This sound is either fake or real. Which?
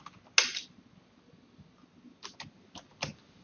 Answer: real